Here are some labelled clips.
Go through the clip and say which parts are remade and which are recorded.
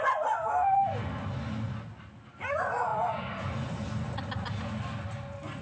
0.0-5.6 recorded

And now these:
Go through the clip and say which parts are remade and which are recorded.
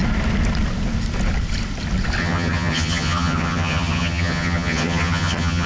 0.0-2.2 recorded; 2.2-5.7 remade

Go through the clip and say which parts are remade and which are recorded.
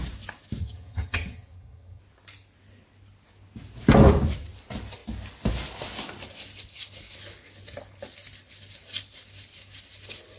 0.0-0.6 recorded; 0.6-2.0 remade; 2.0-10.4 recorded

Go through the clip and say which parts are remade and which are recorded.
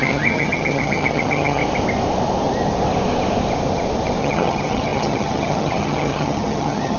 0.0-1.6 remade; 1.6-4.2 recorded; 4.2-7.0 remade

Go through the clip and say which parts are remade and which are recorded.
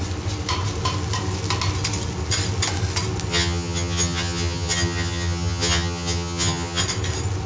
0.0-3.3 recorded; 3.3-6.8 remade; 6.8-7.5 recorded